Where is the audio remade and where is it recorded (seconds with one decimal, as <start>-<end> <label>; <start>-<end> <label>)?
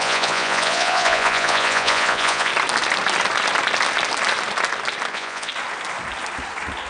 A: 0.0-2.5 remade; 2.5-5.1 recorded; 5.1-5.5 remade; 5.5-6.9 recorded